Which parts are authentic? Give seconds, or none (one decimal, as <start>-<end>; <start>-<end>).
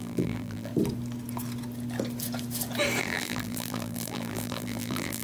0.7-3.0